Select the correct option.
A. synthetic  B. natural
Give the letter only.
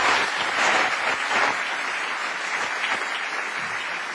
B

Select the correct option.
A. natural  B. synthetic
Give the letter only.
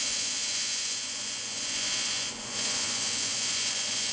B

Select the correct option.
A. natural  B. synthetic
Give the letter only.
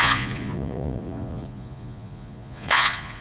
B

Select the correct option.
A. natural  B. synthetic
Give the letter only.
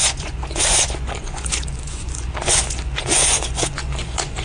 B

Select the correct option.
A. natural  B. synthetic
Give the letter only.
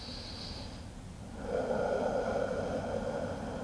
A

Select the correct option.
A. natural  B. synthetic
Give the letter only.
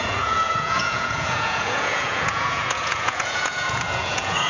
B